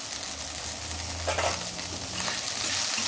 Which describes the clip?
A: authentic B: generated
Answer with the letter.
A